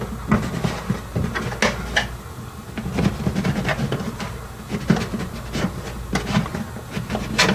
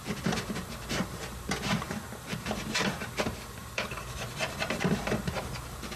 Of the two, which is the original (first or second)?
first